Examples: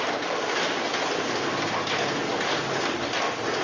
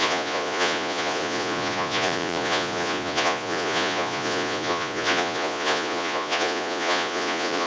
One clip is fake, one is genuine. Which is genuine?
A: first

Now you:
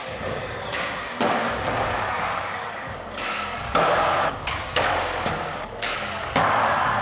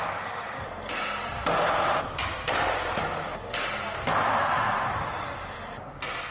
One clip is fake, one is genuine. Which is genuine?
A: second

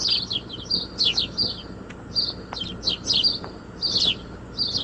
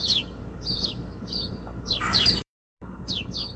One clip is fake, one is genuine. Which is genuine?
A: first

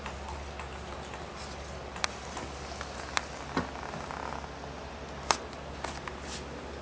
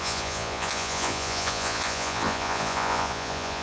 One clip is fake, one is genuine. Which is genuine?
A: first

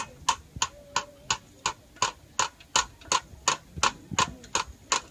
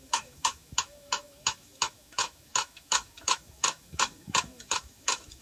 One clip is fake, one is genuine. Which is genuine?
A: first